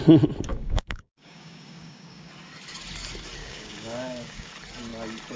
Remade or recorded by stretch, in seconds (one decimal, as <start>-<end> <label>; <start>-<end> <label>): 0.0-0.5 recorded; 0.5-2.3 remade; 2.3-3.4 recorded; 3.4-4.5 remade; 4.5-5.4 recorded

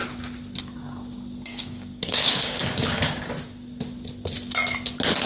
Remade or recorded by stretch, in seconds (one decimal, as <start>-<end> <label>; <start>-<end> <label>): 0.0-1.5 recorded; 1.5-3.3 remade; 3.3-5.3 recorded

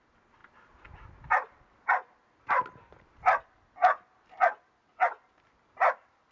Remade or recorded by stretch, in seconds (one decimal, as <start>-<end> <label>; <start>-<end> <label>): 0.0-6.3 recorded

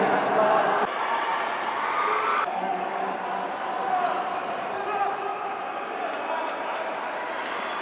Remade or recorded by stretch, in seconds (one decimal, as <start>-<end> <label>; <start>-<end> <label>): 0.0-2.3 recorded; 2.3-3.0 remade; 3.0-7.8 recorded

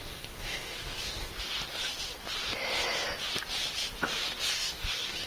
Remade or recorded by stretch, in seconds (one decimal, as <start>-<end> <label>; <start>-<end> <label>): 0.0-1.3 remade; 1.3-4.5 recorded; 4.5-5.3 remade

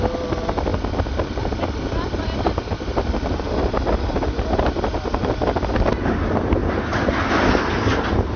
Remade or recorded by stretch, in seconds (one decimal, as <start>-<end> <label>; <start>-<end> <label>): 0.0-8.4 recorded

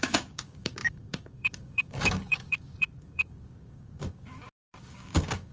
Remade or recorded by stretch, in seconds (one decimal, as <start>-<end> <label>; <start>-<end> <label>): 0.0-5.5 remade